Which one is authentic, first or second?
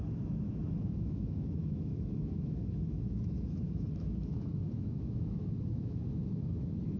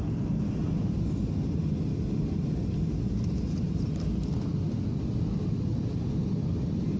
second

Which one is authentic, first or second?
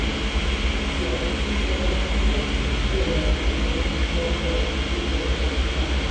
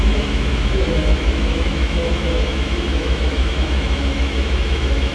first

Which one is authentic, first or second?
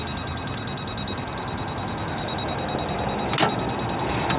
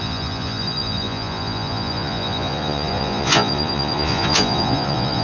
first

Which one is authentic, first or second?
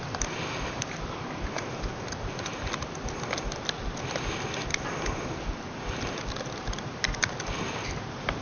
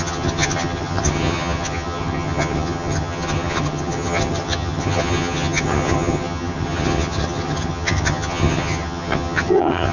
first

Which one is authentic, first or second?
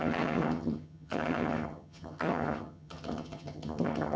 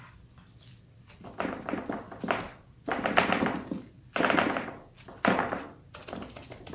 second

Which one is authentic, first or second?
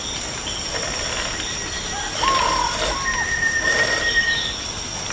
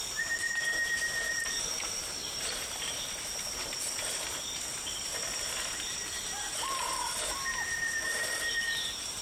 first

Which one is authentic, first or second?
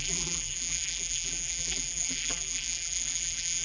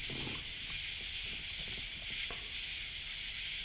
second